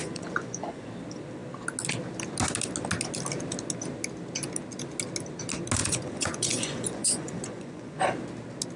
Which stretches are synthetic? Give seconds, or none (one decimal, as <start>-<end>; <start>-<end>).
0.0-0.9; 5.8-8.0

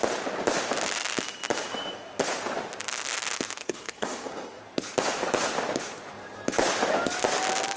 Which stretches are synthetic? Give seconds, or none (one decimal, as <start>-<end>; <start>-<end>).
3.6-4.6

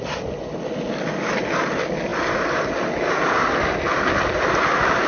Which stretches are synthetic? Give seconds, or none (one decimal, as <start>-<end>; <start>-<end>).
none